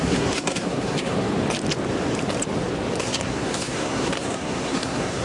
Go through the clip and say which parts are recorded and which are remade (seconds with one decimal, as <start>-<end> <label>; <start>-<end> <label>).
0.0-1.3 remade; 1.3-3.0 recorded; 3.0-5.2 remade